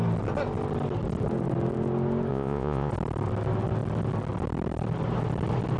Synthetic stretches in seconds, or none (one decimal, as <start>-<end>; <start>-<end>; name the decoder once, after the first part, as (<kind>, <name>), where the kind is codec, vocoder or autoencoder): 2.3-2.9 (vocoder, Vocos)